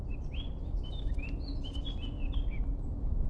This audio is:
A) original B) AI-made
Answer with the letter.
A